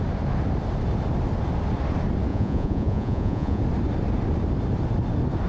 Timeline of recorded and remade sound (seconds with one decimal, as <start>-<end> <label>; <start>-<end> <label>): 0.0-2.3 recorded; 2.3-3.6 remade; 3.6-5.5 recorded